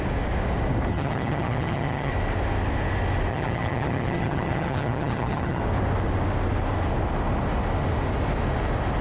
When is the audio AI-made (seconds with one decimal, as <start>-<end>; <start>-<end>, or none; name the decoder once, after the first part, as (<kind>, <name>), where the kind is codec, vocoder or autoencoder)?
0.9-2.1 (vocoder, HiFi-GAN); 3.3-5.6